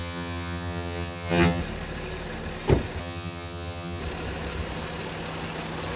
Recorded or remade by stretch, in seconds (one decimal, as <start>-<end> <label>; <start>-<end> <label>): 0.0-1.6 remade; 1.6-3.0 recorded; 3.0-4.0 remade; 4.0-6.0 recorded